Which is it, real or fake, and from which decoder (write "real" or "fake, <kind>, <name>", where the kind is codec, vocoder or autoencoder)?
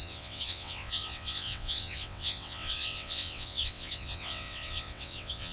fake, vocoder, WaveNeXt